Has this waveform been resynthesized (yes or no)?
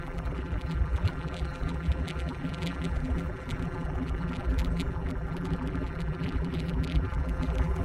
yes